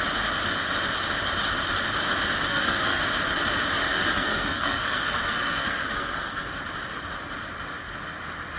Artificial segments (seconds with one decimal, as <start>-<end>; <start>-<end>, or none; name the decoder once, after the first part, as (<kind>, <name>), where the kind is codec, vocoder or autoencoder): 2.5-3.0 (codec, SNAC); 3.8-6.5